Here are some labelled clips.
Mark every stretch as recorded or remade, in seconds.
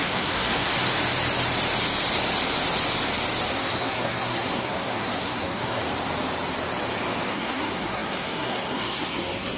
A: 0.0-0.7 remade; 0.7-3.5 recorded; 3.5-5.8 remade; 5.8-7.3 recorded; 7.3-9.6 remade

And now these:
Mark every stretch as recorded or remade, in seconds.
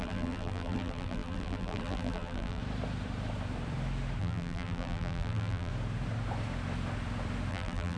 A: 0.0-2.6 remade; 2.6-4.2 recorded; 4.2-5.7 remade; 5.7-7.5 recorded; 7.5-8.0 remade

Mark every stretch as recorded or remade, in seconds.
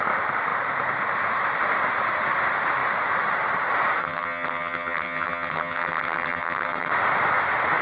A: 0.0-4.0 recorded; 4.0-6.9 remade; 6.9-7.8 recorded